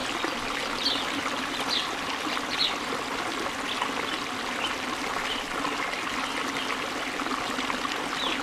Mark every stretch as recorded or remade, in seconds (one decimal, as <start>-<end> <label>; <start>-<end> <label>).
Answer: 0.0-8.4 recorded